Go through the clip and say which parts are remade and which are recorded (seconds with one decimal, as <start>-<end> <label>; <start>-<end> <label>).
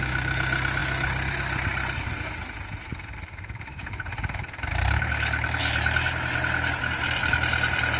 0.0-2.9 recorded; 2.9-5.1 remade; 5.1-8.0 recorded